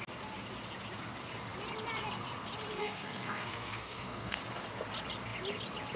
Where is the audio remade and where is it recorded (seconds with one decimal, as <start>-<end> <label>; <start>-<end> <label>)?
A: 0.0-2.8 recorded; 2.8-4.4 remade; 4.4-6.0 recorded